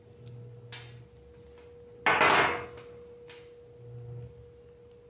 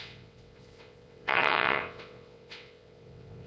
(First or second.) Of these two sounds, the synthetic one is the second